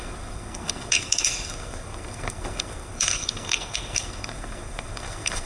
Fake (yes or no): yes